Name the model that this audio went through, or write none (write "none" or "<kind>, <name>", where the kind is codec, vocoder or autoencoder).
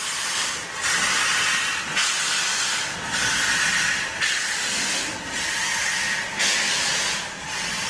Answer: none